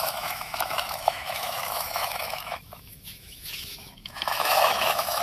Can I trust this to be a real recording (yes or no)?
no